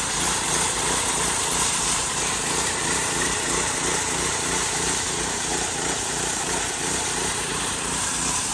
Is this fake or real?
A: fake